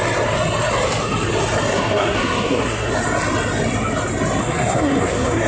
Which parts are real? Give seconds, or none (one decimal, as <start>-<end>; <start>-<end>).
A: 0.0-1.7; 2.9-4.4